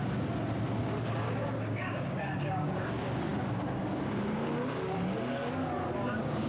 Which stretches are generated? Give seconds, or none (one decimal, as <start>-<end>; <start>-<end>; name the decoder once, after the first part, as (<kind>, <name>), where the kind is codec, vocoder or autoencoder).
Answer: 0.8-5.4 (codec, DAC); 5.9-6.5